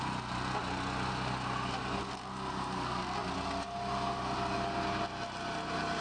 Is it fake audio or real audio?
real